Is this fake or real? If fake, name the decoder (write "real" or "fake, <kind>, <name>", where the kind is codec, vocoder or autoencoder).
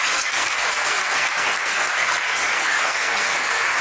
fake, codec, SNAC